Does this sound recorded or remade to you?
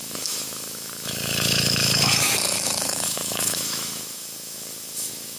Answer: remade